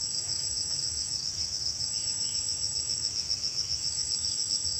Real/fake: fake